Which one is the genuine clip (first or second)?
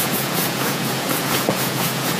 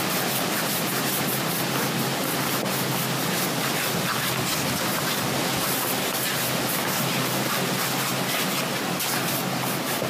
second